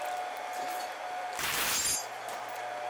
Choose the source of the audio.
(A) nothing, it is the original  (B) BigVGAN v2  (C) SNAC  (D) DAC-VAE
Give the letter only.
A